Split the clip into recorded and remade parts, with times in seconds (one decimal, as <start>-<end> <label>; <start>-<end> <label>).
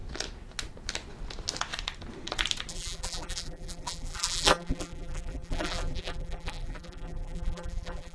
0.0-2.7 recorded; 2.7-8.1 remade